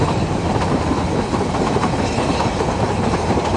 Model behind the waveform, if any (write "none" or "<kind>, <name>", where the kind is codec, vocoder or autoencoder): none